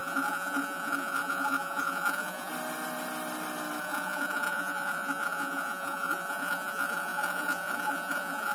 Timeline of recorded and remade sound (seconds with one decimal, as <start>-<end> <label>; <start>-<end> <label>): 0.0-2.5 remade; 2.5-3.8 recorded; 3.8-8.5 remade